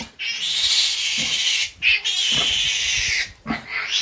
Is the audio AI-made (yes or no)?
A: no